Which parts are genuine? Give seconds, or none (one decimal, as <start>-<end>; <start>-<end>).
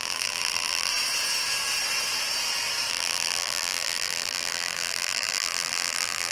0.9-2.9